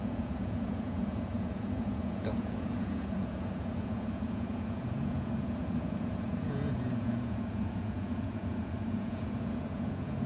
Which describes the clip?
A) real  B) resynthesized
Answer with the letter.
B